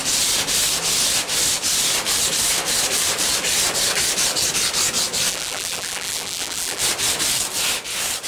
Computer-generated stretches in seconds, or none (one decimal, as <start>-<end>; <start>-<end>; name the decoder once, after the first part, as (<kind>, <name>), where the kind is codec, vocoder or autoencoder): 5.3-6.8 (vocoder, BigVGAN v2)